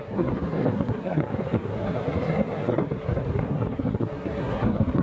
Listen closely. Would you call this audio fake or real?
fake